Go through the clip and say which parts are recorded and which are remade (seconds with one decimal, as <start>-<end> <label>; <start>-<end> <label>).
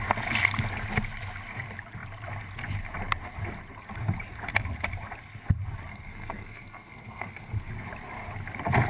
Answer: 0.0-5.9 recorded; 5.9-7.7 remade; 7.7-8.9 recorded